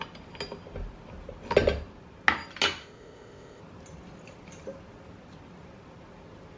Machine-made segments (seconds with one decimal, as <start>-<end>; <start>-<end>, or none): 2.8-3.6